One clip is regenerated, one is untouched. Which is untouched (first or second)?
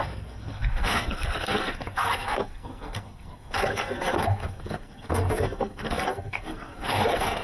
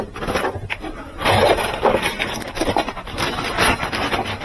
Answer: second